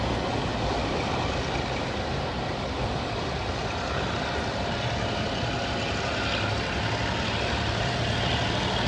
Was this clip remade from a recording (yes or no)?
no